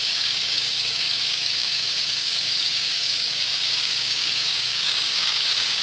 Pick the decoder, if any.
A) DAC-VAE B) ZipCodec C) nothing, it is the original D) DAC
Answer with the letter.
D